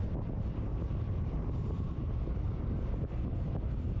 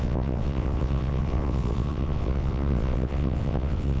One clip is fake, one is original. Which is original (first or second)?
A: first